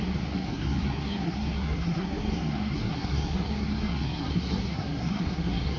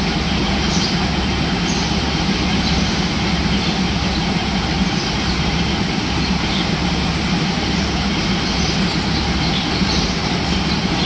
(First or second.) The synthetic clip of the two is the first